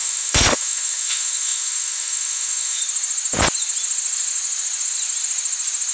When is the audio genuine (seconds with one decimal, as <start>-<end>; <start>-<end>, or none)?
2.8-5.9